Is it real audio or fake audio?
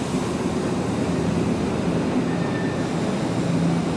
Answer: real